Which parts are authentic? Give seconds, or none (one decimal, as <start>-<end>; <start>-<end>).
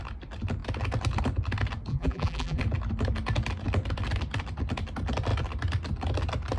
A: 0.0-1.9; 2.6-6.6